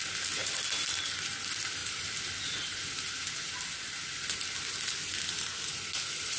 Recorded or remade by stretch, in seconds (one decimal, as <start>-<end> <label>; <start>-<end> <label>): 0.0-6.4 recorded